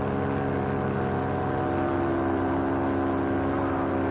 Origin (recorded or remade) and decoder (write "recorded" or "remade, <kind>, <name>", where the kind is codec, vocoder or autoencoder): recorded